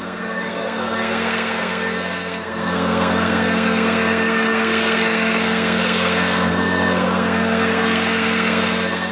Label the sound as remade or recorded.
remade